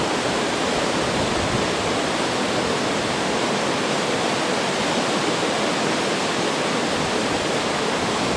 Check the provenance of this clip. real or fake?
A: real